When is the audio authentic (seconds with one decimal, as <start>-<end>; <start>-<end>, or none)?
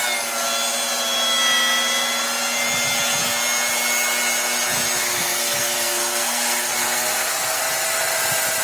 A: 0.0-5.0; 7.6-8.6